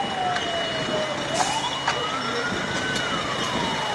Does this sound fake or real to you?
real